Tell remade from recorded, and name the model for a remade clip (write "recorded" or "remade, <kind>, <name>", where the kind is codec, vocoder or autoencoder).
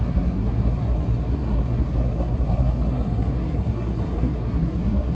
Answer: remade, codec, SNAC